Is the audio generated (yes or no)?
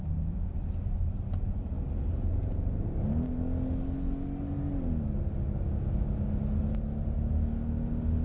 no